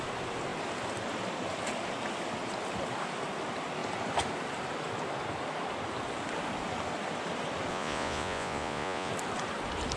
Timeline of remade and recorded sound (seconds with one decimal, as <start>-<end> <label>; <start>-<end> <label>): 0.0-7.7 recorded; 7.7-9.1 remade; 9.1-10.0 recorded